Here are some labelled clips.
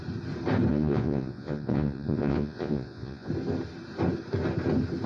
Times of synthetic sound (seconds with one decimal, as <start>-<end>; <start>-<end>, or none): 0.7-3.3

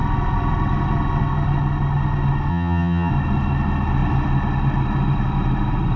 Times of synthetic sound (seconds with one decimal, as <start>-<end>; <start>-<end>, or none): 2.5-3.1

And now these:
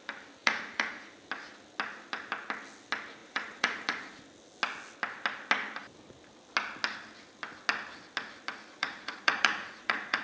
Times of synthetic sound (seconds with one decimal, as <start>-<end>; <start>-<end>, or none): 0.4-1.1; 3.2-4.2; 8.8-10.2